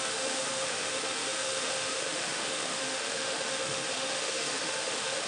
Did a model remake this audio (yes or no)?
yes